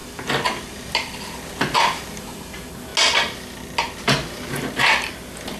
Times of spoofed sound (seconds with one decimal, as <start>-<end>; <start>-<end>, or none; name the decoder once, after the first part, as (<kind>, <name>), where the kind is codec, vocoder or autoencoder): none